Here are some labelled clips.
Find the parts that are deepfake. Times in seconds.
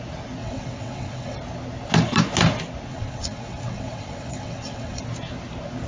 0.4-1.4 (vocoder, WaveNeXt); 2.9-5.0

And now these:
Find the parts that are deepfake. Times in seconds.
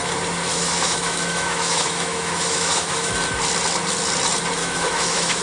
0.5-3.1 (autoencoder, DAC-VAE); 4.6-5.4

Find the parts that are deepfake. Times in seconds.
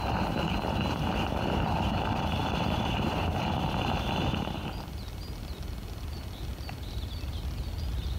2.4-3.7 (vocoder, BigVGAN v2)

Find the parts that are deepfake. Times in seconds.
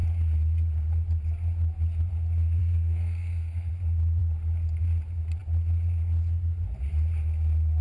2.6-3.7 (codec, SNAC)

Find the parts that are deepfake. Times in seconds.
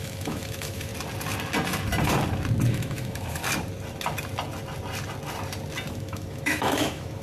0.0-0.9 (autoencoder, DAC-VAE); 2.7-3.4; 5.9-7.2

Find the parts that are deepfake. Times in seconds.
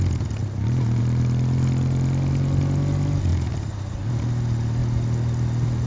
0.4-1.0 (vocoder, BigVGAN v2); 3.3-4.1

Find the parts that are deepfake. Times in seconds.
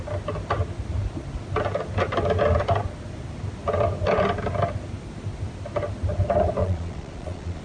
6.6-7.6 (vocoder, Vocos)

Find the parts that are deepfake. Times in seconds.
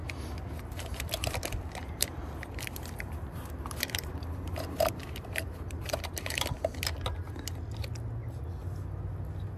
1.8-6.3 (vocoder, BigVGAN v2)